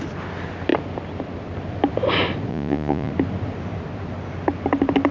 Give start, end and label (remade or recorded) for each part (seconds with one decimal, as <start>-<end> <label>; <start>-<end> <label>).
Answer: 0.0-2.5 recorded; 2.5-3.1 remade; 3.1-5.1 recorded